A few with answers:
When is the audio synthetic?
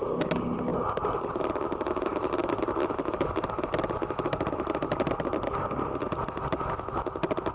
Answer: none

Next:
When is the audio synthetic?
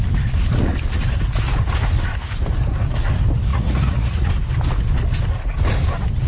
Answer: 3.5-4.3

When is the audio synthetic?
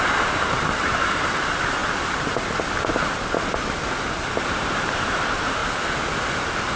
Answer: 0.0-1.8; 4.5-5.6